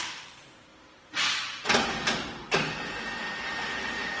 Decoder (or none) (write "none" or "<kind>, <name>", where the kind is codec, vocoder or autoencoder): none